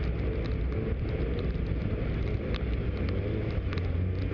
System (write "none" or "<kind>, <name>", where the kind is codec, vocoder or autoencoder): none